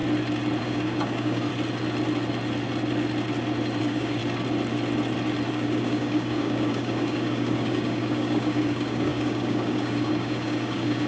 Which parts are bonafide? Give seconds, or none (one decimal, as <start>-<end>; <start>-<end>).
0.0-0.6; 1.5-3.8; 4.2-5.5